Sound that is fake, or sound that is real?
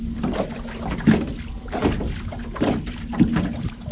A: real